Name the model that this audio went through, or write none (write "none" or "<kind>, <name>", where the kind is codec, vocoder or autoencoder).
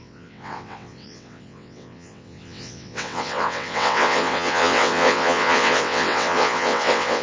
vocoder, WaveNeXt